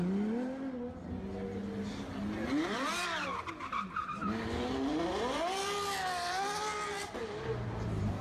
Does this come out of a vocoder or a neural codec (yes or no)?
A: no